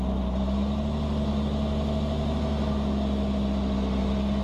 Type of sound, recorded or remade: recorded